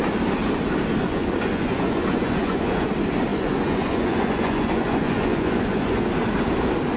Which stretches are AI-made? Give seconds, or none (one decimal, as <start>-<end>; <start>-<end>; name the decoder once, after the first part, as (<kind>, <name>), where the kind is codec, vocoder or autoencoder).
1.0-2.9 (vocoder, Vocos); 3.3-6.1